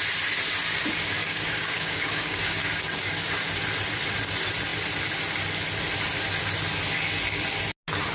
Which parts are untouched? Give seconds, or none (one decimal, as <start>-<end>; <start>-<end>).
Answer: 0.0-1.2; 3.3-8.1